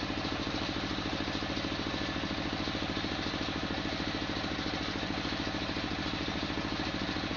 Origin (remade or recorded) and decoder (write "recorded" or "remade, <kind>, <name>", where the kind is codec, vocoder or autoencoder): recorded